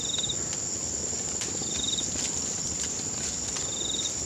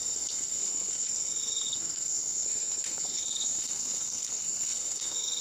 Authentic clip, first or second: first